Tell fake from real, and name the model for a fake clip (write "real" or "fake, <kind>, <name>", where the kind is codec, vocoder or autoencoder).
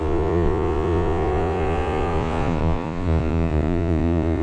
fake, vocoder, Vocos